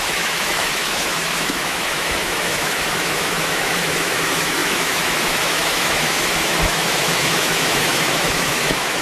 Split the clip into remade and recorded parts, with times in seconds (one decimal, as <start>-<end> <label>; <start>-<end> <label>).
0.0-9.0 remade

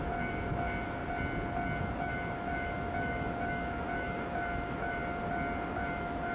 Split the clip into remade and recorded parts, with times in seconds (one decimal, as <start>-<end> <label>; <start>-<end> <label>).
0.0-1.0 remade; 1.0-1.8 recorded; 1.8-5.0 remade; 5.0-5.7 recorded; 5.7-6.3 remade